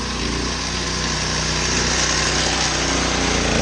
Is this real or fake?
real